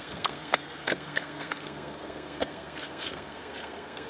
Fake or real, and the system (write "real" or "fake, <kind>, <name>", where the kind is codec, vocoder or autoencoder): fake, codec, SNAC